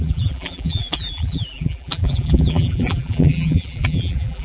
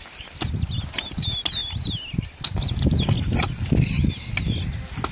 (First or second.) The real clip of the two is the second